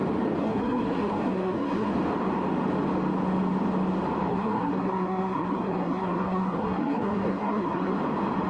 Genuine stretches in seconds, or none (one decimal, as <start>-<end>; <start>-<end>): 0.0-0.4; 1.9-4.3; 7.9-8.5